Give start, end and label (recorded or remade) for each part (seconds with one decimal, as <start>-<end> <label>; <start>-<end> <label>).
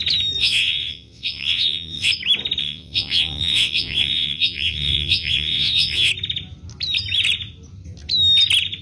0.0-0.4 recorded; 0.4-2.1 remade; 2.1-2.6 recorded; 2.6-6.1 remade; 6.1-8.8 recorded